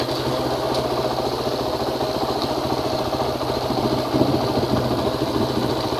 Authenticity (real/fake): fake